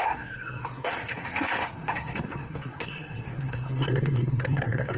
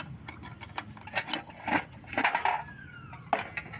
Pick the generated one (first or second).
first